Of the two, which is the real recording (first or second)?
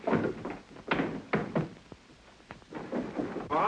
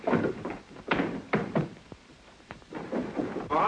first